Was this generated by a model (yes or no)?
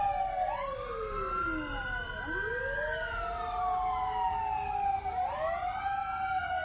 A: no